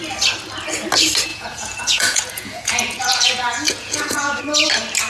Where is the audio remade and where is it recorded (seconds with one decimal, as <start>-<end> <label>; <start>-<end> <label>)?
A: 0.0-1.3 recorded; 1.3-4.4 remade; 4.4-5.1 recorded